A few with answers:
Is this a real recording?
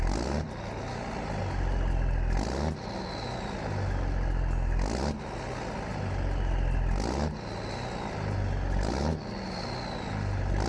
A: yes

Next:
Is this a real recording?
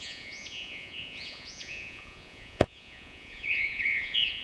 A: no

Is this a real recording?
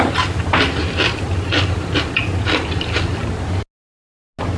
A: yes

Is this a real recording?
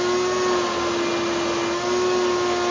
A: yes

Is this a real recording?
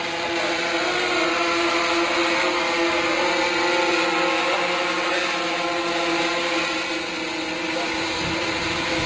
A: yes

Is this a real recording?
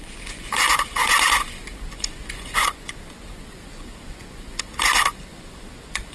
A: no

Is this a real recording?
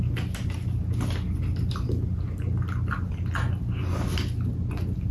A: yes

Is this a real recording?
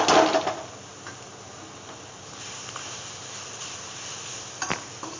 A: yes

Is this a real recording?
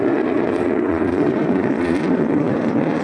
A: no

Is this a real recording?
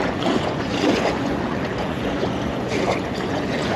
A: no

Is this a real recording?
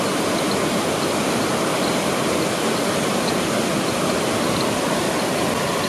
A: yes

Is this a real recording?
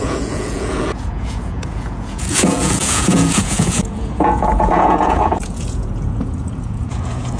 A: no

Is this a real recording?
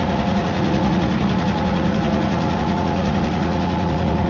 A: no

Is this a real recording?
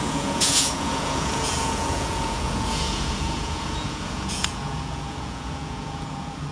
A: no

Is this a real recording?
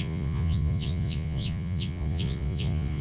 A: no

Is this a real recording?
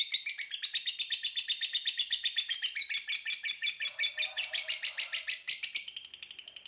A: yes